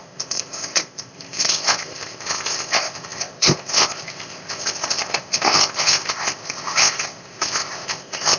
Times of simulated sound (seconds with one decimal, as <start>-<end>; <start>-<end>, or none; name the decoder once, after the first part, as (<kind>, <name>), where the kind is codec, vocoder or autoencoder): 0.0-8.4 (codec, ZipCodec)